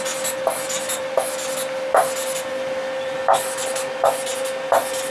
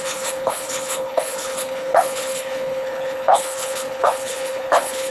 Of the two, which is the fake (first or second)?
second